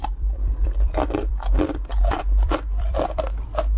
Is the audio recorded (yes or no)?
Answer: no